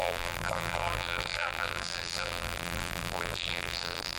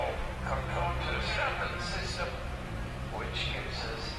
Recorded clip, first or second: second